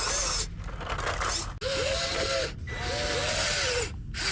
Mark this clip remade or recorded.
recorded